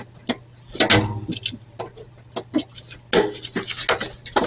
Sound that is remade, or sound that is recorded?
recorded